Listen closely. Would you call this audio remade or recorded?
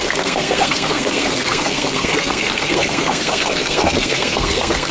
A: remade